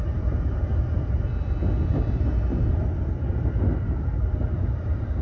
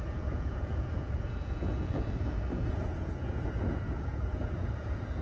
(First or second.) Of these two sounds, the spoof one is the second